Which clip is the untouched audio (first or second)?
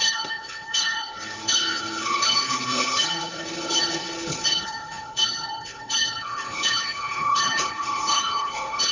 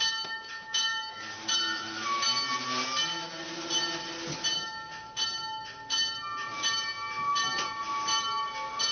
second